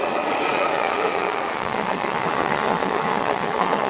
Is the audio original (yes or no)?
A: no